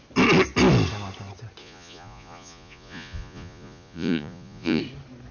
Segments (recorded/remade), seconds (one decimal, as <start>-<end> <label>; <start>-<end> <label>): 0.0-1.6 recorded; 1.6-4.8 remade; 4.8-5.3 recorded